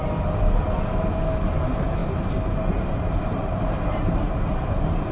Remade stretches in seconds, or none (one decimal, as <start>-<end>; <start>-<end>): 2.0-5.1